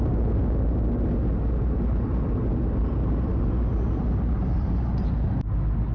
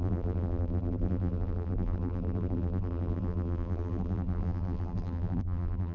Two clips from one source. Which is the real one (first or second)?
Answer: first